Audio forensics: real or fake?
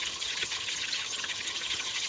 fake